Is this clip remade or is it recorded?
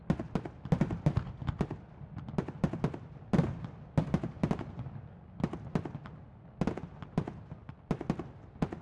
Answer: recorded